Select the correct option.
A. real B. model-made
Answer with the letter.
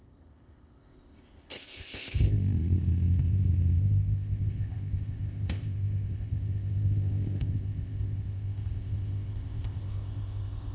B